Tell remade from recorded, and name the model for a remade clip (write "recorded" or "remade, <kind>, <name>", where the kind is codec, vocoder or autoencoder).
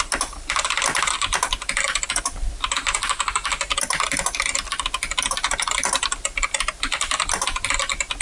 recorded